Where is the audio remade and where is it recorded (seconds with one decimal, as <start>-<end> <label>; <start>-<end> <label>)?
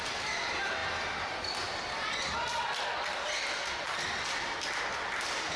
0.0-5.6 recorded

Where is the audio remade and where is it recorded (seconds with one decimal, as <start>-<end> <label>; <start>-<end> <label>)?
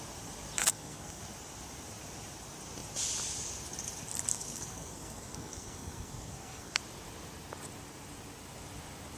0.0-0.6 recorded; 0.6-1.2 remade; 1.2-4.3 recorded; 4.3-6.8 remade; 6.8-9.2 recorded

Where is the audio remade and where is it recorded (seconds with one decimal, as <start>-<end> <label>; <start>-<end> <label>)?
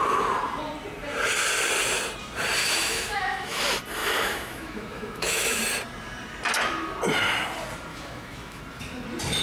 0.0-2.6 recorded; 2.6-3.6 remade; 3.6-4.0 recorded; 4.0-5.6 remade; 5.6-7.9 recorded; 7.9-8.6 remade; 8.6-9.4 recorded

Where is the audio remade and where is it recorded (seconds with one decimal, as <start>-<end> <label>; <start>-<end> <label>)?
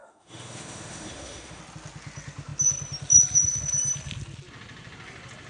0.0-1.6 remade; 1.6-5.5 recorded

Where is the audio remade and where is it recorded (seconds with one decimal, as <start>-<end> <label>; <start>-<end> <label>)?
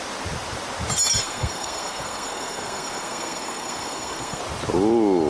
0.0-1.2 recorded; 1.2-4.4 remade; 4.4-5.3 recorded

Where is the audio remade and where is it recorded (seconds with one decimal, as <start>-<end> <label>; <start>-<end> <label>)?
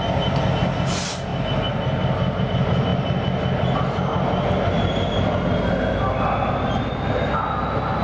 0.0-8.0 recorded